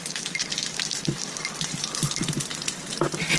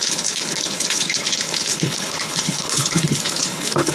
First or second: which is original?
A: first